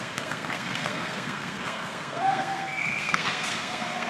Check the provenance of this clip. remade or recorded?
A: remade